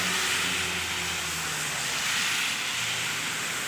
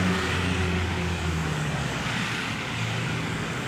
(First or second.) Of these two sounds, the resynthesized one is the second